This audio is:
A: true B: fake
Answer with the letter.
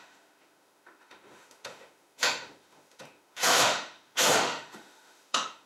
B